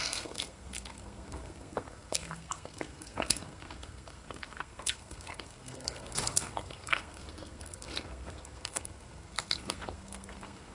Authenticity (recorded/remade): remade